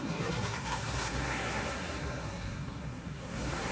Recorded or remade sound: remade